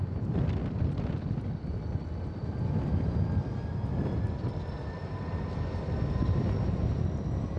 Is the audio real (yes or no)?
yes